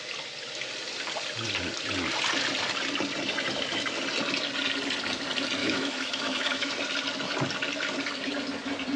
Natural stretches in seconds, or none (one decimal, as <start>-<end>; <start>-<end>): 0.0-5.6; 6.7-9.0